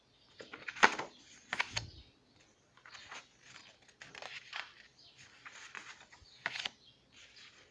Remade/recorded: recorded